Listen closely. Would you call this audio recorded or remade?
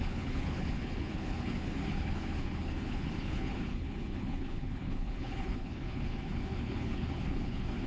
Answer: remade